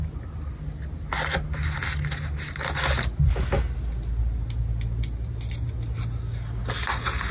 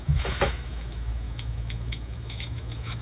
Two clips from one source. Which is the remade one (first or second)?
second